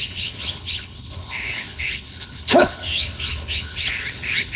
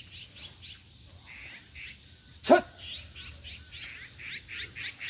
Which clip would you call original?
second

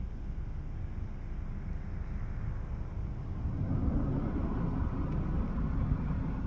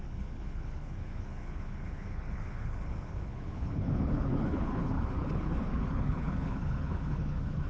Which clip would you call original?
first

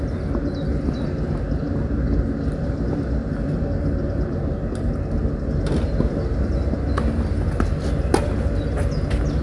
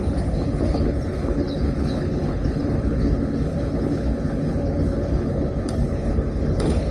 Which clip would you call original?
first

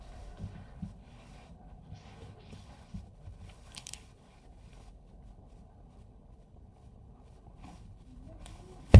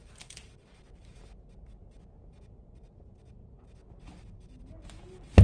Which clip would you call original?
second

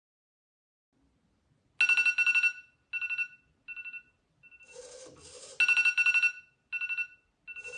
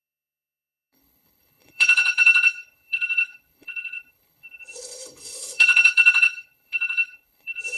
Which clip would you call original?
first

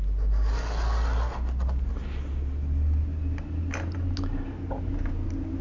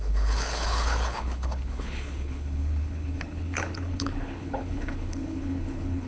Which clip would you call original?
first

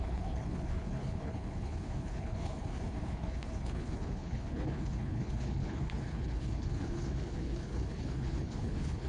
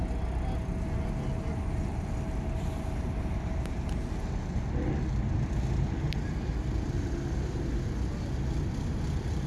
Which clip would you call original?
second